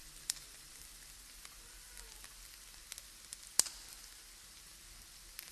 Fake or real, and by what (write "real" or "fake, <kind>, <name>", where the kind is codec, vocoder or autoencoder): real